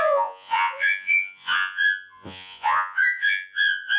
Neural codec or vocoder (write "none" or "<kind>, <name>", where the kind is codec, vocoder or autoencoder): vocoder, Vocos